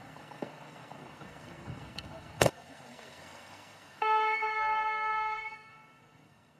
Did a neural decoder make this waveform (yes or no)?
yes